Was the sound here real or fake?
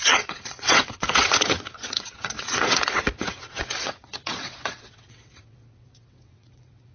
fake